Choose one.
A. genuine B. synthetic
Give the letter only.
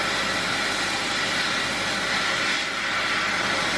A